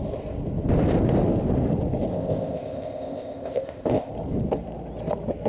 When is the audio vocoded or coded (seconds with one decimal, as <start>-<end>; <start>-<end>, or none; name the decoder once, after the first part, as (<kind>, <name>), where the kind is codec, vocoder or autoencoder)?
2.1-4.1 (codec, ZipCodec)

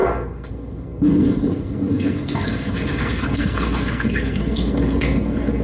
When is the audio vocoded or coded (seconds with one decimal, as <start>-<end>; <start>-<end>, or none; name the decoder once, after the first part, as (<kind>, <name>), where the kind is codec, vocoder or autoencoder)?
0.0-5.6 (codec, SNAC)